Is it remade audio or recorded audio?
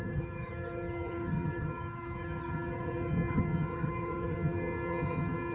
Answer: remade